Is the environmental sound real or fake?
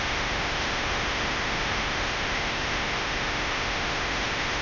fake